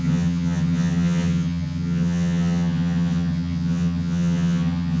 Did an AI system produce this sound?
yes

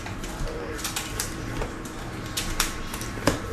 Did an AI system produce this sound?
yes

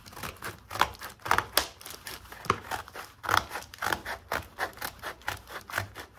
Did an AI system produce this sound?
no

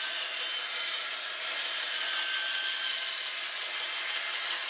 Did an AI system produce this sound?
no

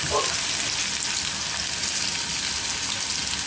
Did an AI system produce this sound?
no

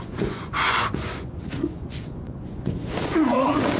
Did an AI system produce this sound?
yes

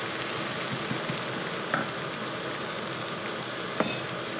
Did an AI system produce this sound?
no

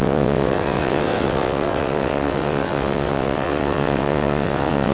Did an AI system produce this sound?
yes